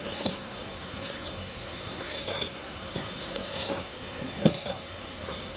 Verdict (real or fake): fake